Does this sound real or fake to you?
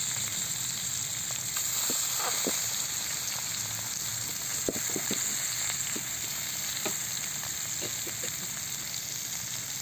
real